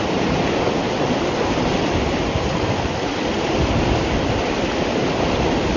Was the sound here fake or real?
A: real